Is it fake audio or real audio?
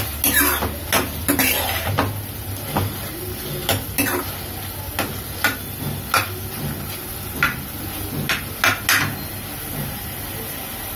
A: real